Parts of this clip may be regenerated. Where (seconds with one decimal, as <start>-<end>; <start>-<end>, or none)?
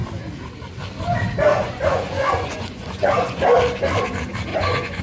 1.5-3.4; 4.5-5.0